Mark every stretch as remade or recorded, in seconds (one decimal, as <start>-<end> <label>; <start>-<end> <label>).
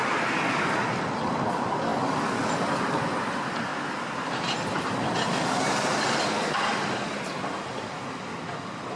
0.0-3.7 remade; 3.7-4.7 recorded; 4.7-9.0 remade